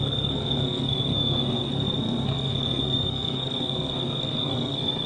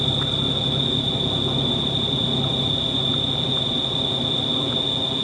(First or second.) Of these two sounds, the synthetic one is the first